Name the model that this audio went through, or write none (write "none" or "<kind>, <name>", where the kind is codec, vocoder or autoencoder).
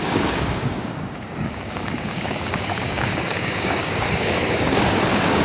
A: codec, DAC